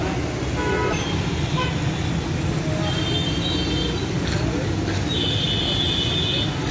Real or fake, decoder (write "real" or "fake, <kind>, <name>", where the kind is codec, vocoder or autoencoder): real